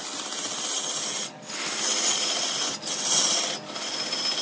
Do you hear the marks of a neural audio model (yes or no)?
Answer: no